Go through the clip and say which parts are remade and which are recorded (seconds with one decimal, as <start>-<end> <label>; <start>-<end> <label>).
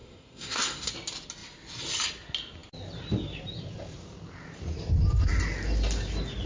0.0-0.9 remade; 0.9-6.5 recorded